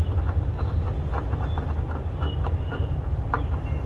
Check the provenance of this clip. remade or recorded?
recorded